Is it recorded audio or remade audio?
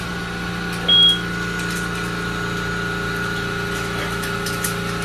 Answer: recorded